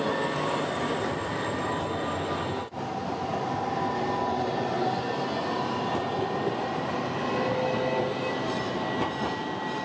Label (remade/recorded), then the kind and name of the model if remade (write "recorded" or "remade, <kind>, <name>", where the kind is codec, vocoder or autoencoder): recorded